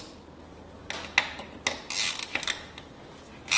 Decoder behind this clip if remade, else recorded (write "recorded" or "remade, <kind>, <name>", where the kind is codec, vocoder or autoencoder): recorded